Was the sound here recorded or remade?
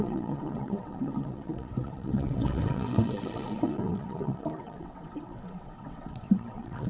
remade